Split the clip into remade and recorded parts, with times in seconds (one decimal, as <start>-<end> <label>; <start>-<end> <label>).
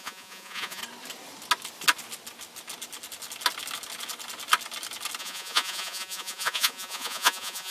0.0-0.8 remade; 0.8-5.2 recorded; 5.2-7.7 remade